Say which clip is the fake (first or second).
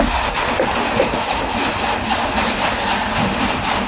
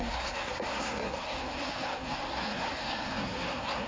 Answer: second